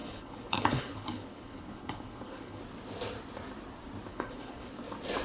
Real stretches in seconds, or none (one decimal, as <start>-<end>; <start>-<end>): 2.6-4.1; 4.7-5.2